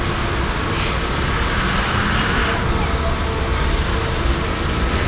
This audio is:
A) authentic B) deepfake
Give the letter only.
A